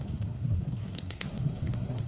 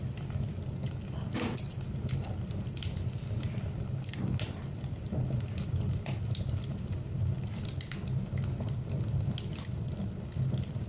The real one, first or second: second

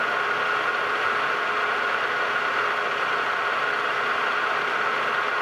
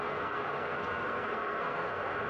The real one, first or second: first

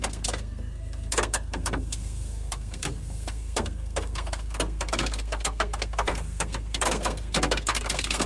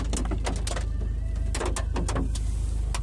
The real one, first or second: second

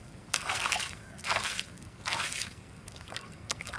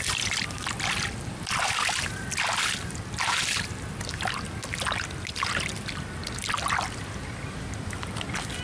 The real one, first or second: second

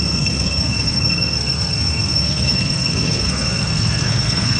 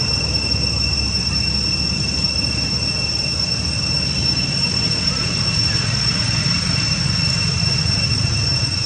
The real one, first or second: second